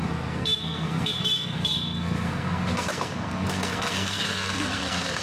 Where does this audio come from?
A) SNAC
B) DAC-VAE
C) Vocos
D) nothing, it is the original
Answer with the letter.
A